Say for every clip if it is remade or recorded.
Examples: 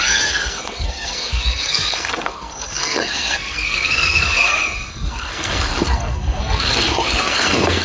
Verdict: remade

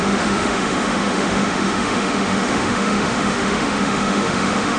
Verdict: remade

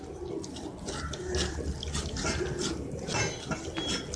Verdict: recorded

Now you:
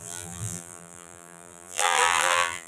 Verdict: remade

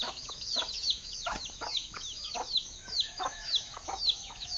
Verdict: remade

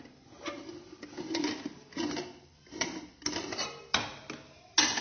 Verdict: recorded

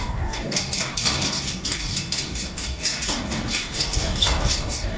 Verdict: remade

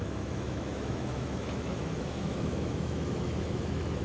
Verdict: remade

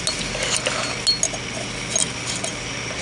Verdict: recorded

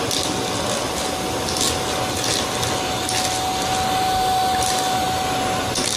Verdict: recorded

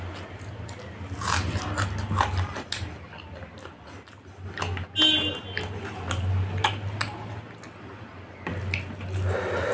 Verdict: recorded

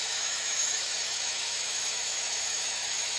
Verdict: remade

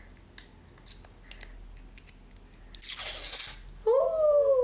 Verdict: recorded